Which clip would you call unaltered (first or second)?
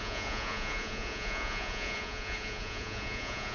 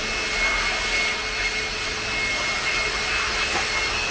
second